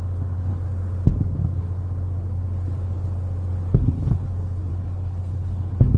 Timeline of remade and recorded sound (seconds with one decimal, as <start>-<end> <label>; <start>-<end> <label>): 0.0-3.5 recorded; 3.5-4.3 remade; 4.3-4.7 recorded; 4.7-6.0 remade

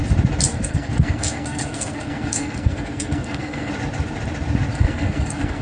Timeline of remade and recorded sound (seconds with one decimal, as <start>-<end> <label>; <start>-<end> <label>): 0.0-0.5 recorded; 0.5-3.7 remade; 3.7-4.7 recorded; 4.7-5.6 remade

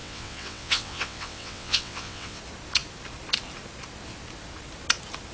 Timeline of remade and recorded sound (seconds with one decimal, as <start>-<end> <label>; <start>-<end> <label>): 0.0-2.4 remade; 2.4-5.3 recorded

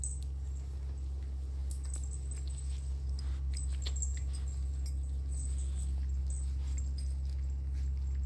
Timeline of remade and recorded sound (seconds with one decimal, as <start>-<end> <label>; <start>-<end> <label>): 0.0-8.3 recorded

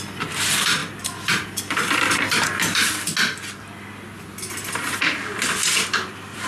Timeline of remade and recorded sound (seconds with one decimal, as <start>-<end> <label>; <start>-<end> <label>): 0.0-2.8 remade; 2.8-5.3 recorded; 5.3-6.5 remade

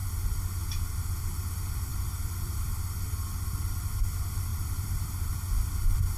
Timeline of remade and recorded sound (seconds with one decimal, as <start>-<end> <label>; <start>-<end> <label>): 0.0-1.2 recorded; 1.2-6.2 remade